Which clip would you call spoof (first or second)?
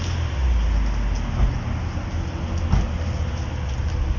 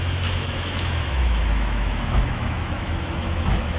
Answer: second